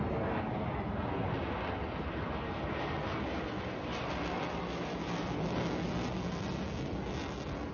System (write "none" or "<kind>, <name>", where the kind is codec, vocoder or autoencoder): none